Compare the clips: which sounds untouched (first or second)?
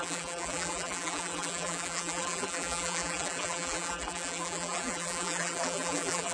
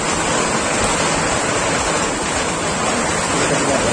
second